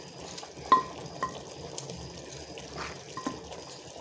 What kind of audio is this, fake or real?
real